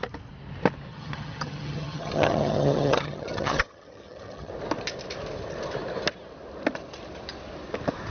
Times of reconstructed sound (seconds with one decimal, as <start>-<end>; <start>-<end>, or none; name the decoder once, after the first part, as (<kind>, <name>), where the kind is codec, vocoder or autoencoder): 0.9-4.5 (vocoder, HiFi-GAN)